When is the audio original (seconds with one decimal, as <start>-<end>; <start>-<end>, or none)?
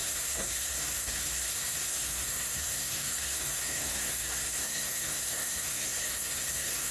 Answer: none